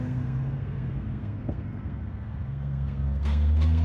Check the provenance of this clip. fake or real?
fake